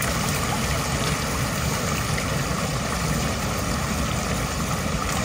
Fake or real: real